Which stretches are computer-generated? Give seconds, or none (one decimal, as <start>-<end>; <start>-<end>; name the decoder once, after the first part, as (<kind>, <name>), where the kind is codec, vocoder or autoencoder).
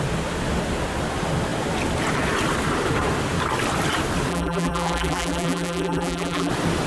4.3-6.5 (vocoder, BigVGAN v2)